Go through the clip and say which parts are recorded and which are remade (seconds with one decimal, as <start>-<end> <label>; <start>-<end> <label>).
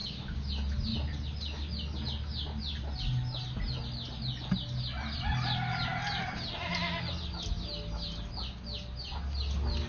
0.0-0.5 remade; 0.5-9.9 recorded